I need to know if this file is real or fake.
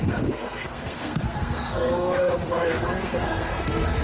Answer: fake